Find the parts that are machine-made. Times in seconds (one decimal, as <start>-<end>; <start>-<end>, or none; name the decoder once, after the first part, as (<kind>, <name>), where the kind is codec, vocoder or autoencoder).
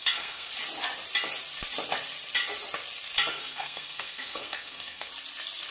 0.0-0.5 (codec, SNAC); 3.3-5.1